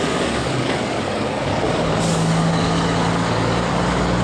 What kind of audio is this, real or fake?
fake